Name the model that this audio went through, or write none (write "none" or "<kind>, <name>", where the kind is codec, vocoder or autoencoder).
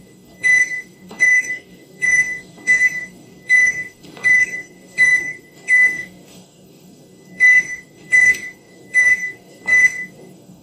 codec, DAC